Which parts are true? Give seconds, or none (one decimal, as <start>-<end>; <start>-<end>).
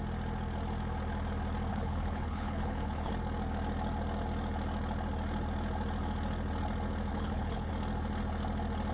0.0-1.7; 3.1-7.1; 7.7-8.9